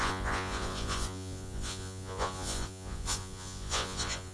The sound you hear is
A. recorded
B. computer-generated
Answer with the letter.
B